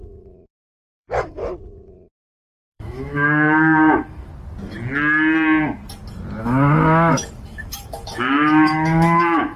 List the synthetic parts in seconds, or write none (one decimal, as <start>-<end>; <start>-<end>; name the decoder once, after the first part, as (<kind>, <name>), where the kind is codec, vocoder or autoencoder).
0.0-1.4 (autoencoder, DAC-VAE); 2.3-4.3; 6.4-9.6